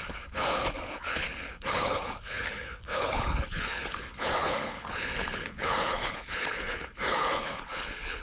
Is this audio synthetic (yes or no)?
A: yes